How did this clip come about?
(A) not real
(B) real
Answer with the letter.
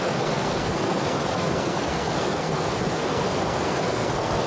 A